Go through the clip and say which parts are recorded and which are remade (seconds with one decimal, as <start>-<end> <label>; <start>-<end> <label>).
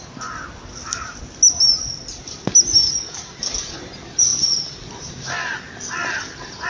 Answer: 0.0-6.7 recorded